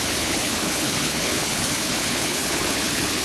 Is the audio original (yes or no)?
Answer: no